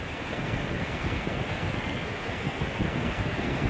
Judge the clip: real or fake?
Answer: fake